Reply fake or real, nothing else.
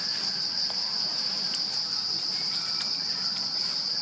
real